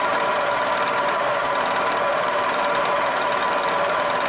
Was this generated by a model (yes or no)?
yes